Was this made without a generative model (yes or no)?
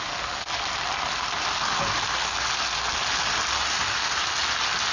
yes